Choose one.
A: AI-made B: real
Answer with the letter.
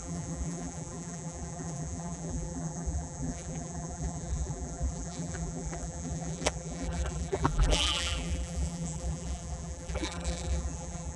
A